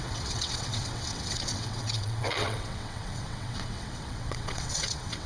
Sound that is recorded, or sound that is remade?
remade